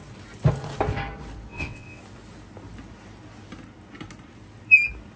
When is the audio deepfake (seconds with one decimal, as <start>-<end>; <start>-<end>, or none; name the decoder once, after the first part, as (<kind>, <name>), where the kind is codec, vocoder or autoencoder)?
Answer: 1.5-2.0 (vocoder, WaveNeXt)